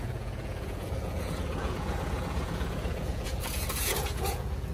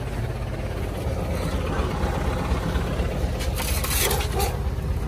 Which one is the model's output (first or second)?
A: first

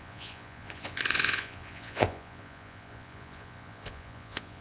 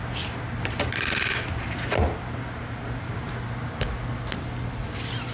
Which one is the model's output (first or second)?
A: first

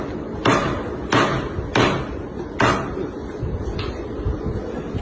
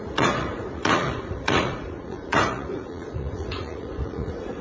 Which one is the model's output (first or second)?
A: second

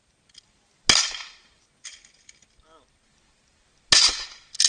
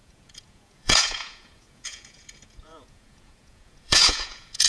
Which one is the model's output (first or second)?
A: second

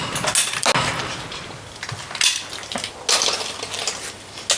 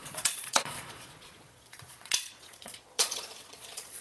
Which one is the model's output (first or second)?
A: second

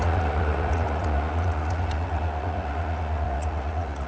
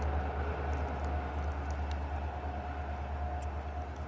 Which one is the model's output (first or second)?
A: first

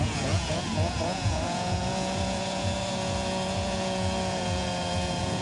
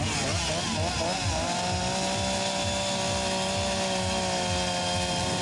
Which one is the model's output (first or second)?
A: first